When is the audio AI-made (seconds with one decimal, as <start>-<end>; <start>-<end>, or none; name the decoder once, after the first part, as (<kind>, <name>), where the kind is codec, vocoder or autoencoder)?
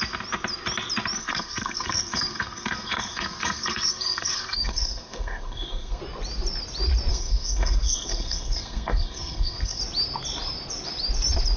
1.2-6.0 (codec, SNAC); 7.1-9.8